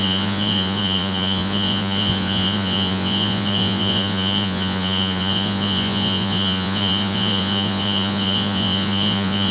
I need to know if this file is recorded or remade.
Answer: remade